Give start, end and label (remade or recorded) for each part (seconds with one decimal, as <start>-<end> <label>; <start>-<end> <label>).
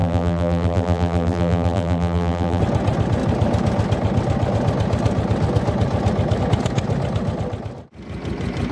0.0-2.6 remade; 2.6-8.7 recorded